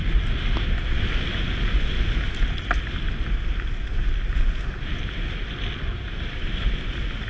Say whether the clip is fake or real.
real